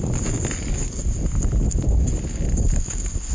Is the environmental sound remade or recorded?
recorded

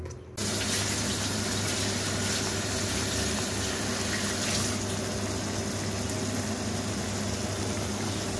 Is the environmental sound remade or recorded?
recorded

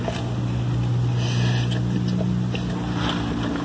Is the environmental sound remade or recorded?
recorded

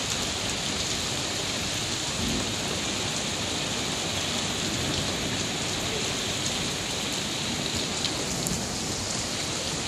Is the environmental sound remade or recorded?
recorded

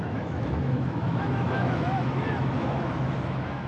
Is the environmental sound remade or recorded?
remade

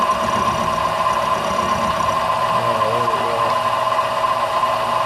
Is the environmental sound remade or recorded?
recorded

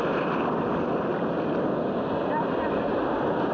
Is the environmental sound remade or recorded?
recorded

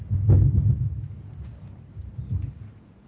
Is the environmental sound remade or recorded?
recorded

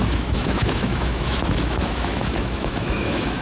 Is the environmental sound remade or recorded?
remade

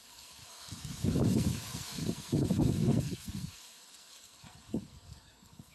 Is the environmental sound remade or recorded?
remade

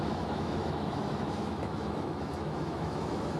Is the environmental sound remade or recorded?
remade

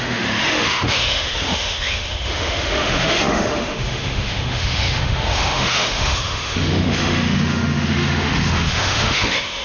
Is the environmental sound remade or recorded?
remade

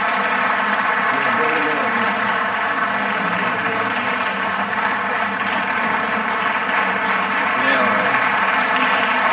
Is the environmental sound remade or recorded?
recorded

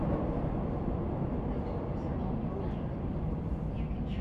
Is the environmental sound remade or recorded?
recorded